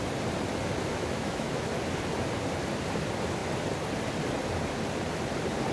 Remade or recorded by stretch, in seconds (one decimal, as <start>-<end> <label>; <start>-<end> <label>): 0.0-0.9 recorded; 0.9-1.7 remade; 1.7-5.7 recorded